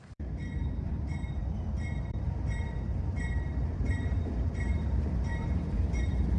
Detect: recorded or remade remade